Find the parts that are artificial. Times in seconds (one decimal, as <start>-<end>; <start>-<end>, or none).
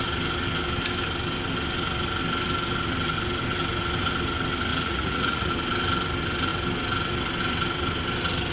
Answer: 4.7-5.5